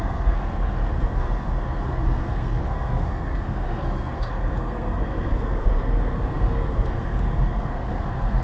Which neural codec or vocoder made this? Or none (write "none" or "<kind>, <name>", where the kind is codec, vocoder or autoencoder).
codec, SNAC